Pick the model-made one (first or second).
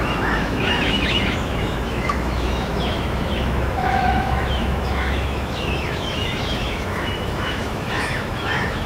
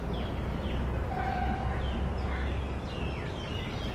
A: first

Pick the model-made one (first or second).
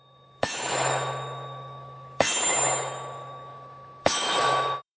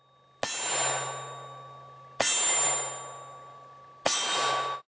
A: first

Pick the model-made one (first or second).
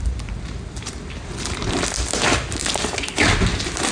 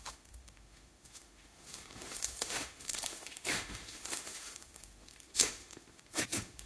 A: second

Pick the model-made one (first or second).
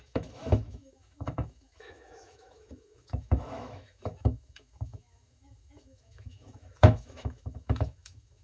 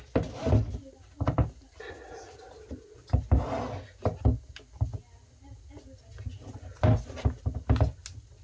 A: first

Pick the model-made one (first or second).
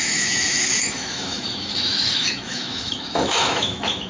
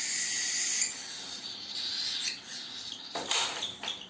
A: first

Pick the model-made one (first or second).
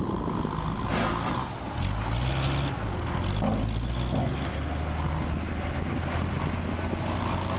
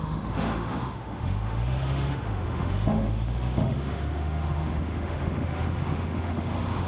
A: second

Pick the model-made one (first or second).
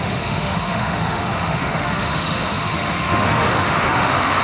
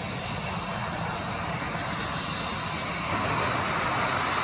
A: first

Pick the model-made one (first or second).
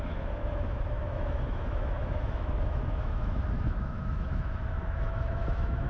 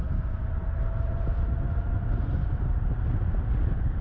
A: first